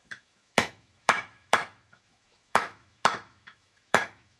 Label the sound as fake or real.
fake